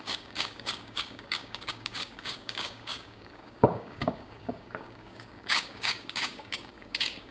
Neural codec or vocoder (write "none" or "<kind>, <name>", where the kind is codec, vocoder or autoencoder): codec, DAC